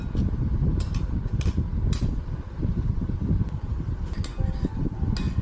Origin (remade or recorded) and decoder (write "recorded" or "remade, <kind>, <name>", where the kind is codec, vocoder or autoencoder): recorded